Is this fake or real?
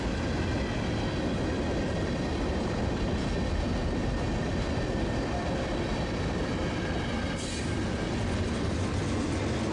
real